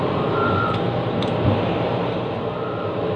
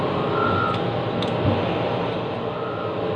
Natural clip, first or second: second